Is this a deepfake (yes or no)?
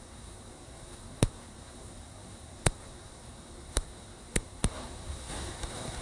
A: yes